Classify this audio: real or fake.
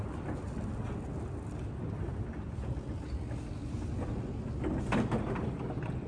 real